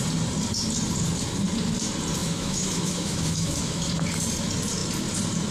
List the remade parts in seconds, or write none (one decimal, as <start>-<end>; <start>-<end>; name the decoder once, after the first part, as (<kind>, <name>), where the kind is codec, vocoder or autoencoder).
2.2-3.9 (autoencoder, DAC-VAE)